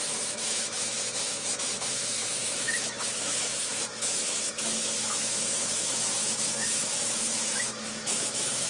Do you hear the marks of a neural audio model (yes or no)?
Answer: yes